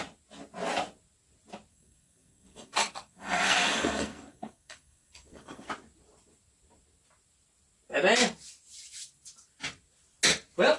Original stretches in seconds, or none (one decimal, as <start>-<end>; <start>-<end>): 0.0-1.7; 5.7-10.8